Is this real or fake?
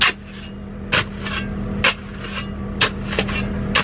real